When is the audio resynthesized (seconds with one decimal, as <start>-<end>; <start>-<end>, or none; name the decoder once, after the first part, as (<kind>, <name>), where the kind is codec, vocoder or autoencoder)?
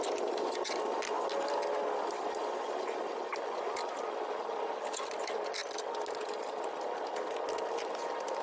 none